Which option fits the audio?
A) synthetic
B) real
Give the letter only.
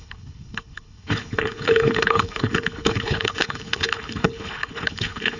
A